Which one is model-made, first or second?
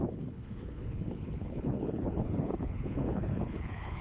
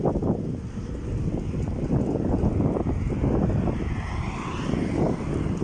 first